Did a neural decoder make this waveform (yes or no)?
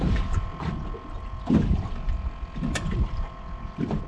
no